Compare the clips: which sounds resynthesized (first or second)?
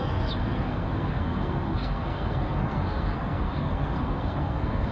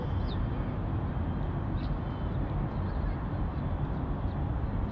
first